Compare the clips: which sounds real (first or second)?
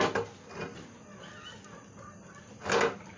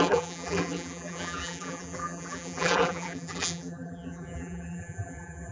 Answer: first